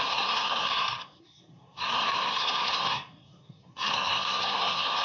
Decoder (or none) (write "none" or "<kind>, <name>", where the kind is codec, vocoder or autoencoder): codec, SNAC